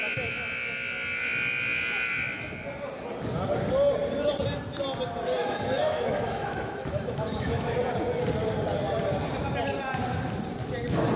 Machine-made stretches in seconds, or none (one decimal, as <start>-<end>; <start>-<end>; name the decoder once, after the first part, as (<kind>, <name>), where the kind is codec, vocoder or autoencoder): 5.4-7.7 (autoencoder, DAC-VAE)